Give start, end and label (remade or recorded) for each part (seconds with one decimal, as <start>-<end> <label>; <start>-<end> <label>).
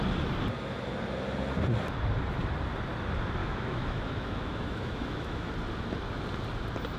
0.0-3.4 recorded; 3.4-5.5 remade; 5.5-7.0 recorded